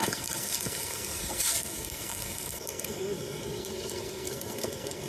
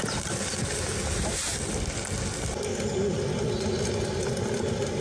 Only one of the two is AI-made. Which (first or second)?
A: first